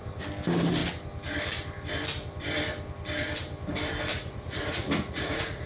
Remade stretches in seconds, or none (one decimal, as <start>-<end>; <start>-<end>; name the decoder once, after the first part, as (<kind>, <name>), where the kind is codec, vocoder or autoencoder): 4.1-5.7 (vocoder, Vocos)